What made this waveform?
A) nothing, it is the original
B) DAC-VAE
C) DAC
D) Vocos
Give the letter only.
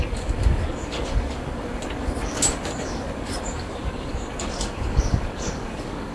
C